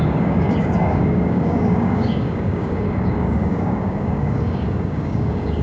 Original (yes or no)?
no